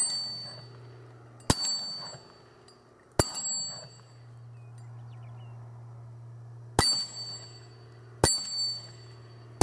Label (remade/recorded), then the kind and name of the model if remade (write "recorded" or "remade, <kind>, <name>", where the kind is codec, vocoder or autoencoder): recorded